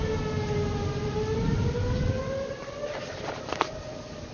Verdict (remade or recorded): recorded